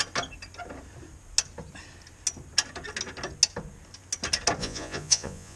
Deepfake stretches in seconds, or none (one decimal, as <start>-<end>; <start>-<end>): 4.6-5.6